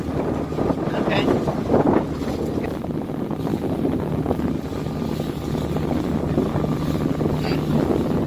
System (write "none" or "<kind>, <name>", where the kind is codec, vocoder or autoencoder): none